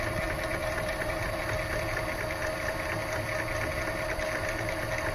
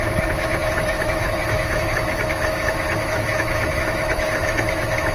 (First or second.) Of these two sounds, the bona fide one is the first